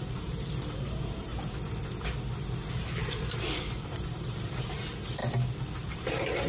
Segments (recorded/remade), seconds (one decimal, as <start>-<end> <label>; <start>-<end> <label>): 0.0-1.3 remade; 1.3-3.8 recorded; 3.8-5.2 remade; 5.2-5.9 recorded; 5.9-6.5 remade